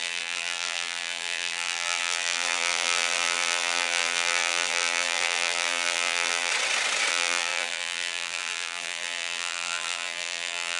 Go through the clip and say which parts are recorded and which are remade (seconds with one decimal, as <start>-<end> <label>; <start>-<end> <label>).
0.0-6.5 remade; 6.5-7.1 recorded; 7.1-10.8 remade